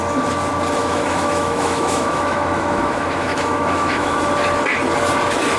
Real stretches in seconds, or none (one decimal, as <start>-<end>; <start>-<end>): 0.0-0.8; 4.2-5.6